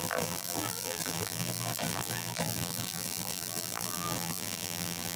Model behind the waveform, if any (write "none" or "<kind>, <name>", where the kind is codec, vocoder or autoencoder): vocoder, BigVGAN v2